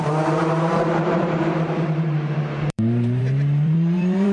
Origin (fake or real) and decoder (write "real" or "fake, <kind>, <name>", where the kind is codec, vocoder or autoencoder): fake, vocoder, BigVGAN v2